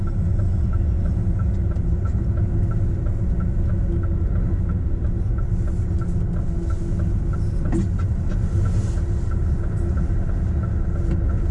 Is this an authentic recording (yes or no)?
yes